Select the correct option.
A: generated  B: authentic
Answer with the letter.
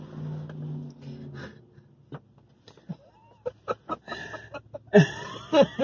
B